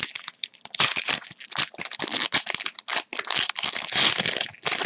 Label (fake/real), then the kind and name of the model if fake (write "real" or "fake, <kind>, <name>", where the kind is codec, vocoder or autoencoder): real